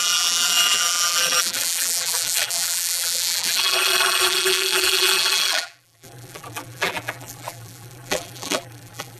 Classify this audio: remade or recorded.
remade